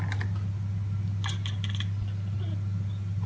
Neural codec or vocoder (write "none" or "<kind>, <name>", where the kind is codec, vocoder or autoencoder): none